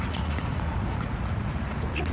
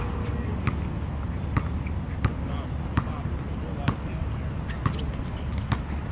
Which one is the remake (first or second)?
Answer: first